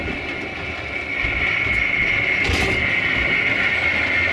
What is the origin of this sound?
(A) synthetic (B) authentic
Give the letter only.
B